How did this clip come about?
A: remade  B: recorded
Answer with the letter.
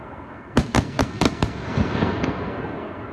A